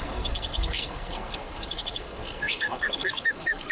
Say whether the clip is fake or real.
fake